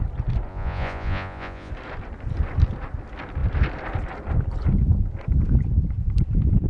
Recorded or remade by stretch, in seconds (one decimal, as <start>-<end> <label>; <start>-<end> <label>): 0.0-0.5 recorded; 0.5-1.7 remade; 1.7-6.7 recorded

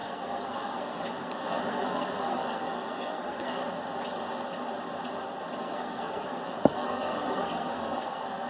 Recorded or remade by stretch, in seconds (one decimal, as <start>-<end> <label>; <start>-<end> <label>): 0.0-3.6 remade; 3.6-5.6 recorded; 5.6-8.5 remade

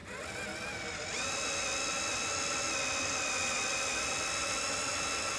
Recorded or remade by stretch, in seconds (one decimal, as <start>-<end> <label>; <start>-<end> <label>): 0.0-5.4 recorded

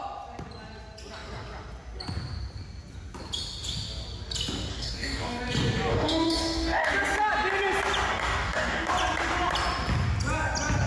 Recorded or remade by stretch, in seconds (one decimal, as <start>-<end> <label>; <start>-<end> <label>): 0.0-4.7 recorded; 4.7-5.4 remade; 5.4-5.9 recorded; 5.9-6.9 remade; 6.9-8.1 recorded; 8.1-8.9 remade; 8.9-10.9 recorded

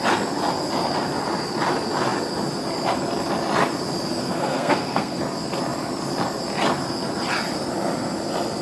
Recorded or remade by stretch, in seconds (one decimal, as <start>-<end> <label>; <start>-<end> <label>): 0.0-4.2 recorded; 4.2-5.2 remade; 5.2-8.6 recorded

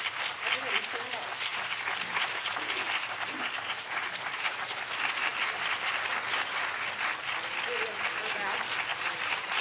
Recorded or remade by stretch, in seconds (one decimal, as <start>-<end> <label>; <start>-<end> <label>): 0.0-1.5 recorded; 1.5-4.8 remade; 4.8-8.9 recorded; 8.9-9.6 remade